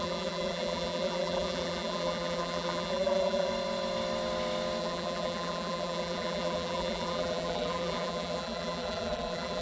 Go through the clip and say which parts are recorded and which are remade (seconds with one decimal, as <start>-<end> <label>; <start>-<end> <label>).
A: 0.0-3.5 remade; 3.5-4.8 recorded; 4.8-9.6 remade